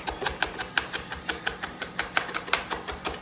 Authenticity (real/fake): real